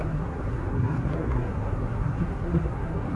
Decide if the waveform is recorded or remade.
remade